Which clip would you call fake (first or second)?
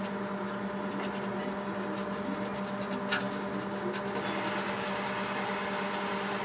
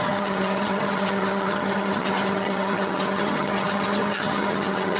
second